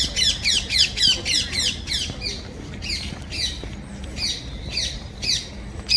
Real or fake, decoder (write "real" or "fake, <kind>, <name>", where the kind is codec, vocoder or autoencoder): real